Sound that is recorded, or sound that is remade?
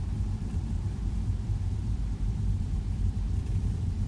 remade